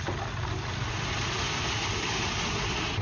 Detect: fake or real real